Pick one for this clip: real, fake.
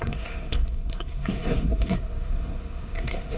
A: fake